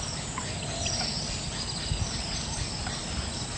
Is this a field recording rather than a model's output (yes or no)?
yes